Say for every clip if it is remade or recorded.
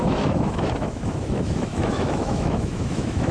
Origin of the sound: remade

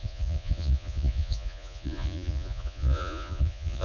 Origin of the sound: remade